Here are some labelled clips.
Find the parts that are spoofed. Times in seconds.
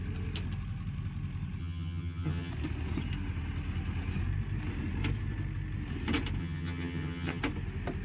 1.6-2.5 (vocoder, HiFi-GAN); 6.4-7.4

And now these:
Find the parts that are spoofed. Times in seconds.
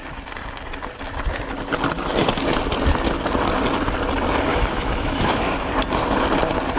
4.5-5.4 (autoencoder, DAC-VAE)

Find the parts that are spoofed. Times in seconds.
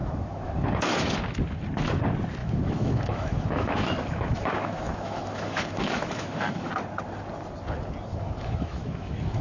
0.0-1.2 (autoencoder, DAC-VAE); 2.4-6.7; 8.1-9.4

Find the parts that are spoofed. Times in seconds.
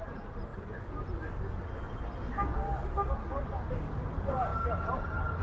0.0-0.5 (vocoder, BigVGAN v2); 3.7-5.4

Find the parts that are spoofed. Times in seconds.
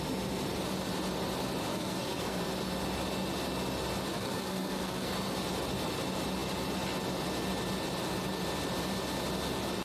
1.7-2.4 (codec, SNAC); 4.1-5.1